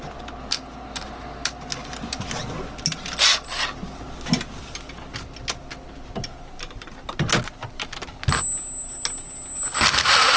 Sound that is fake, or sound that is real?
real